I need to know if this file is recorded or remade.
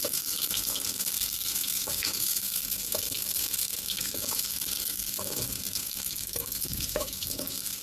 remade